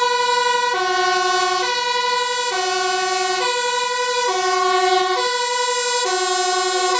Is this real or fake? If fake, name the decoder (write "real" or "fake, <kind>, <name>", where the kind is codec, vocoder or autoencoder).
real